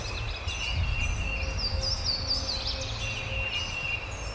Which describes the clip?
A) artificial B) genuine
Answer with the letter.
B